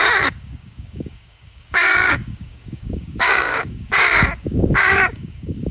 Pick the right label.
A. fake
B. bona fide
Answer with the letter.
A